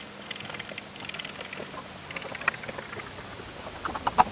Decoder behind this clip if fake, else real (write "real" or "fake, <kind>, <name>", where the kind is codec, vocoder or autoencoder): real